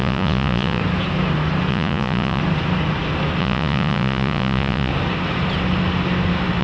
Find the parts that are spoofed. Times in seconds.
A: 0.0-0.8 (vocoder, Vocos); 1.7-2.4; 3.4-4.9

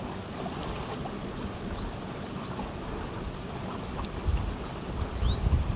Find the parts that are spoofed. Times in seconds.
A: none